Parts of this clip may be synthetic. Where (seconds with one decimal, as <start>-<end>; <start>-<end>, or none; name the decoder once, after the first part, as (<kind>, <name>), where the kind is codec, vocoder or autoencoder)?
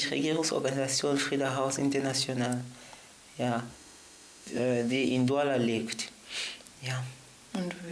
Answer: 3.7-5.3 (autoencoder, DAC-VAE)